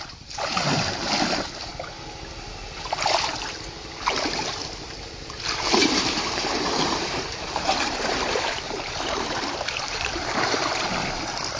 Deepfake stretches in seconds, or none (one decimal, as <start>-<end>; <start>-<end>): 5.8-10.7